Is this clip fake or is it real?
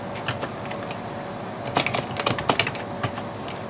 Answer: real